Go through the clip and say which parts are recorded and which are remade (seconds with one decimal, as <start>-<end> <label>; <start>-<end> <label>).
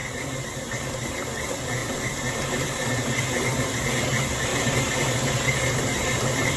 0.0-1.4 remade; 1.4-1.8 recorded; 1.8-4.0 remade; 4.0-4.5 recorded; 4.5-6.6 remade